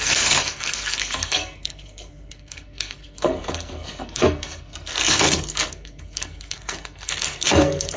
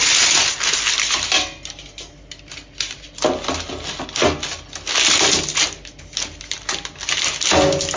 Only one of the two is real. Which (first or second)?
second